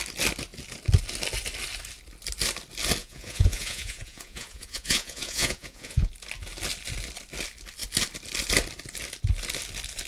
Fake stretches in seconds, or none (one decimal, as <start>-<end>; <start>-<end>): 3.0-6.1